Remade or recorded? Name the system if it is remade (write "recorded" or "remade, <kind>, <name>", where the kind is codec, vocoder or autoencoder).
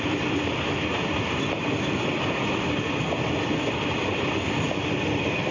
recorded